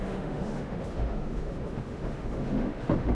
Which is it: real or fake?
fake